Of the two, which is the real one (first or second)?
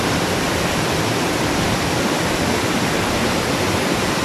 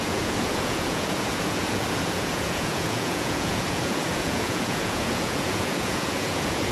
first